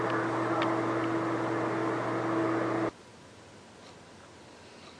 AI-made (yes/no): no